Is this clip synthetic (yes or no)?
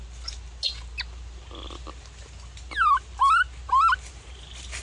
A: no